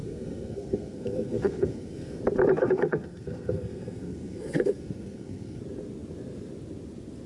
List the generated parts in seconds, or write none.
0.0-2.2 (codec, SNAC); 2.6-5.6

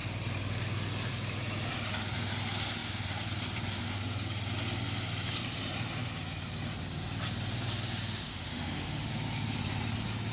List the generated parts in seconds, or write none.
8.3-9.1 (autoencoder, DAC-VAE)

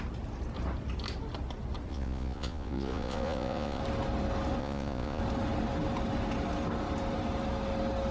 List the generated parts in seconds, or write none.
1.9-3.8 (vocoder, Vocos); 4.6-5.2

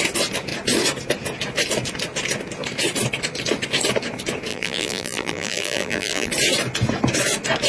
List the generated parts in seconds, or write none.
4.5-6.3 (vocoder, BigVGAN v2)